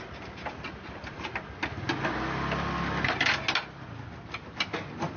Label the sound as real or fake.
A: real